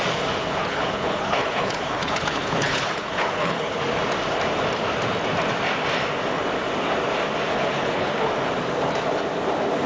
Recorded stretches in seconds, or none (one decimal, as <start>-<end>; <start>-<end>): 0.0-0.6; 3.8-7.5; 8.3-9.9